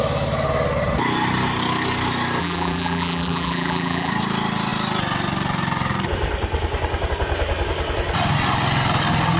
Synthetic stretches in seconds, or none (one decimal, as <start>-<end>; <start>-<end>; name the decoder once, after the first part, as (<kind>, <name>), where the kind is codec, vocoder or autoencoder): 2.4-4.1 (vocoder, BigVGAN v2)